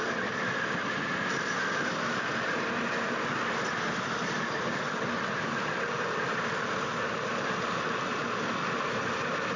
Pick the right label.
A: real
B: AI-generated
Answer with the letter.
A